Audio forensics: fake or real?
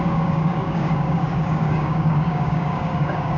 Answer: fake